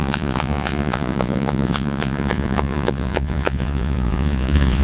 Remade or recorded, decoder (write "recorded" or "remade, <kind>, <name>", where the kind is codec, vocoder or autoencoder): remade, vocoder, Vocos